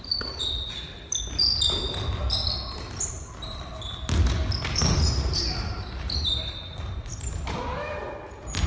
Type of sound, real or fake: real